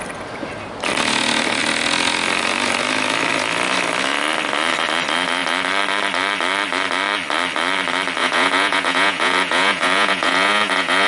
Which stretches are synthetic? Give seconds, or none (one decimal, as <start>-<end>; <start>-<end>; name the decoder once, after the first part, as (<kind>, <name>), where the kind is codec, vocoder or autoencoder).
8.2-11.1 (vocoder, Vocos)